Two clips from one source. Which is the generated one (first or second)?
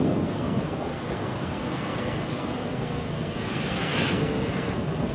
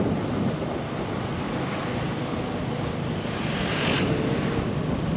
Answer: first